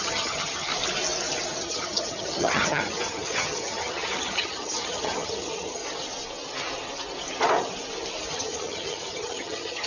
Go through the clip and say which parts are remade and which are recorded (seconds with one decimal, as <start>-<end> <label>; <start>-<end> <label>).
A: 0.0-0.7 remade; 0.7-1.6 recorded; 1.6-5.8 remade; 5.8-8.3 recorded; 8.3-9.9 remade